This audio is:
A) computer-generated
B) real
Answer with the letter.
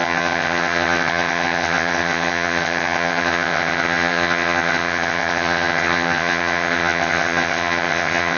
A